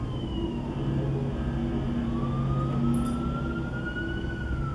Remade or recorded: recorded